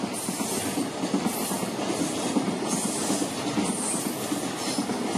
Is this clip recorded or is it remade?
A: recorded